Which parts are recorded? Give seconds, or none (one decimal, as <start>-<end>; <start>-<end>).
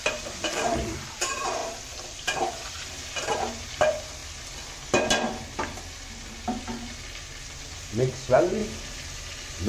4.2-7.5; 8.6-9.7